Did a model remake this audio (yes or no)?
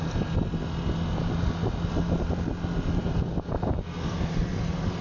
no